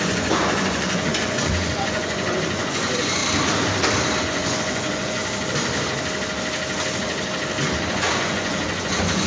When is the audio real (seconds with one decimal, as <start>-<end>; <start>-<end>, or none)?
3.2-4.2; 5.2-7.9